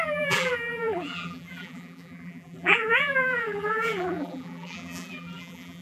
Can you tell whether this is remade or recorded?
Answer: remade